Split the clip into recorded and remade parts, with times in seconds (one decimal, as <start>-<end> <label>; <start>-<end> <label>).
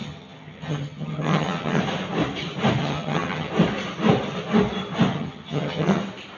0.0-1.8 remade; 1.8-2.8 recorded; 2.8-3.5 remade; 3.5-5.1 recorded; 5.1-6.0 remade; 6.0-6.4 recorded